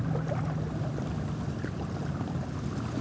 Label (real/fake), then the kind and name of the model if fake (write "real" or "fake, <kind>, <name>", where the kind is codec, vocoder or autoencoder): real